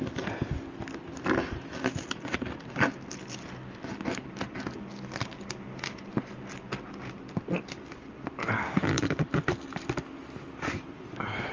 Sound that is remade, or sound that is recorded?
recorded